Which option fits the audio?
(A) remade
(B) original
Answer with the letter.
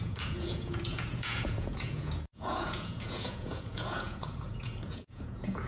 A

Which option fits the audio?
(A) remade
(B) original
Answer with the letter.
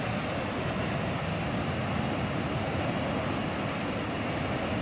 B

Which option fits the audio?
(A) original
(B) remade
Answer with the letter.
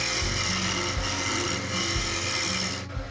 A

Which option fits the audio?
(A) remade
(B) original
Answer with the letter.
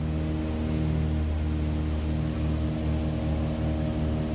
B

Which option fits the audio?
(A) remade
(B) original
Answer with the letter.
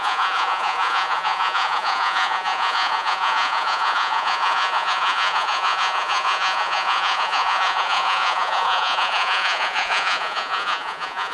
A